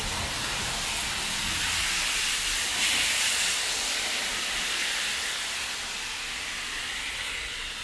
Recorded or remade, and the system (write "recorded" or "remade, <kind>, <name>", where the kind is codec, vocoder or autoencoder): recorded